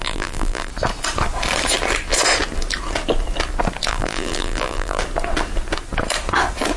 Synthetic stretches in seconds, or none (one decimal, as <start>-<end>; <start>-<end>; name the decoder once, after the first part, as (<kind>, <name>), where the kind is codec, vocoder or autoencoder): 0.0-0.7 (vocoder, BigVGAN v2); 3.9-5.0